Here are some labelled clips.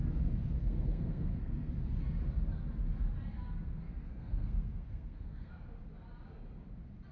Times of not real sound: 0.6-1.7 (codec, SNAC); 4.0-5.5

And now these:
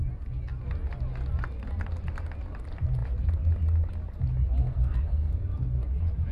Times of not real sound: 4.6-5.4 (codec, SNAC)

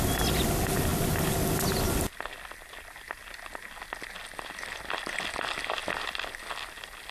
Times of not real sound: none